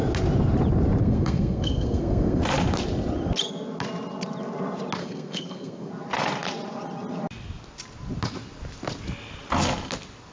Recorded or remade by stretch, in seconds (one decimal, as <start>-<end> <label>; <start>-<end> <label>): 0.0-1.0 recorded; 1.0-2.4 remade; 2.4-5.0 recorded; 5.0-5.9 remade; 5.9-10.3 recorded